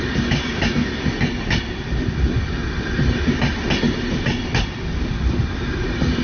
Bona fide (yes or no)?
yes